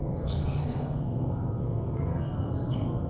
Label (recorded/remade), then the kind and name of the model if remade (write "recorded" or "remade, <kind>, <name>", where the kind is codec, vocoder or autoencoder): remade, codec, SNAC